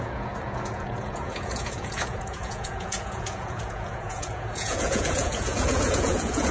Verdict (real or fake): fake